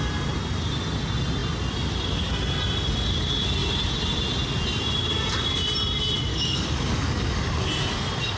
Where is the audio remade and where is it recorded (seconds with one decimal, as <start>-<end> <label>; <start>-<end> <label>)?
0.0-6.3 recorded; 6.3-7.7 remade; 7.7-8.4 recorded